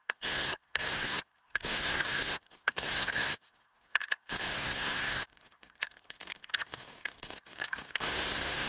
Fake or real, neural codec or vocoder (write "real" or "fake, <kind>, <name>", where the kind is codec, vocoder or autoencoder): fake, codec, SNAC